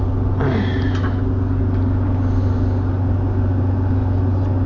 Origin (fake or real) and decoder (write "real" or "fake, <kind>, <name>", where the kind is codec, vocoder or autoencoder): real